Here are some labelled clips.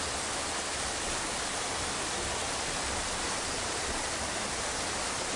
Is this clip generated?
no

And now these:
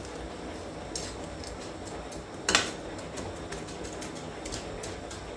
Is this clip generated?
no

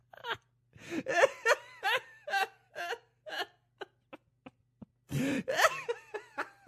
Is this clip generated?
no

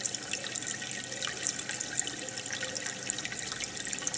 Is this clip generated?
no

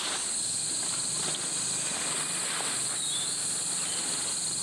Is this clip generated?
no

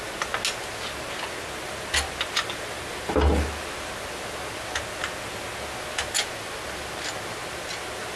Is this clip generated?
no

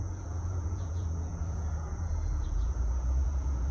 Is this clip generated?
yes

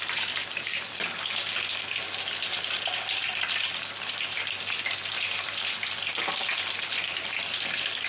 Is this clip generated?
yes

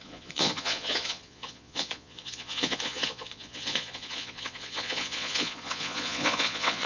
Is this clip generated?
yes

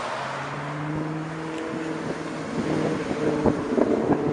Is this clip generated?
no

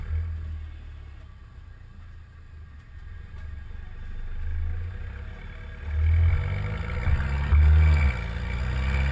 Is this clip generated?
no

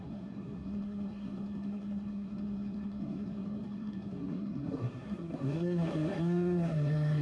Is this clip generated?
yes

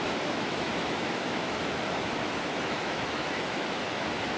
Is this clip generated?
yes